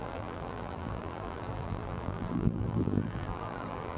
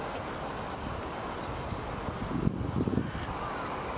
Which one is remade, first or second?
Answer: first